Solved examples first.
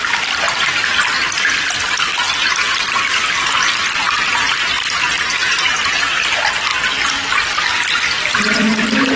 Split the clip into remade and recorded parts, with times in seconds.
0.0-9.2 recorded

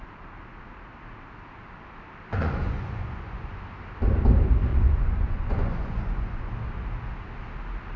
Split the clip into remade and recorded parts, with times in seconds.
0.0-2.3 recorded; 2.3-3.6 remade; 3.6-4.7 recorded; 4.7-6.5 remade; 6.5-8.0 recorded

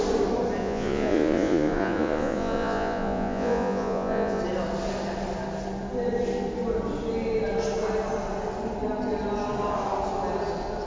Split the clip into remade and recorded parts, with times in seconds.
0.0-0.6 recorded; 0.6-4.4 remade; 4.4-10.9 recorded

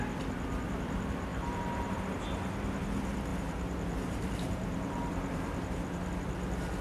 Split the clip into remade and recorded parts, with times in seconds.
0.0-1.3 recorded; 1.3-2.1 remade; 2.1-3.3 recorded; 3.3-6.1 remade; 6.1-6.8 recorded